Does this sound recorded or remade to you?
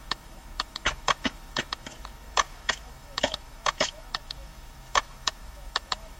remade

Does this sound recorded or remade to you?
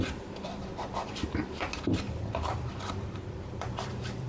remade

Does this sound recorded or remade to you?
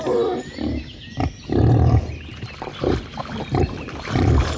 recorded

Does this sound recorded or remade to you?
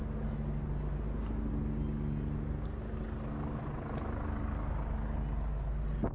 recorded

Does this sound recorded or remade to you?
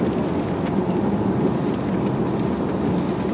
recorded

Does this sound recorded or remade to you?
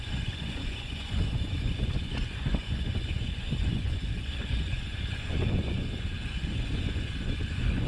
remade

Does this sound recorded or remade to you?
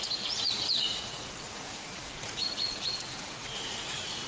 remade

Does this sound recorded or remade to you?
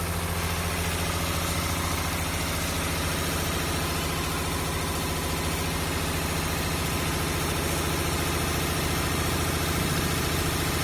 recorded